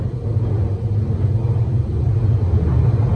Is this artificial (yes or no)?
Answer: no